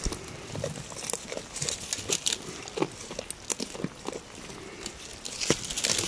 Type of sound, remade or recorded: recorded